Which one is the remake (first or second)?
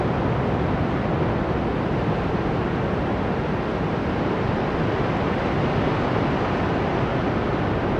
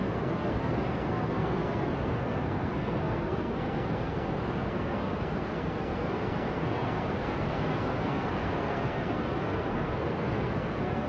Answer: second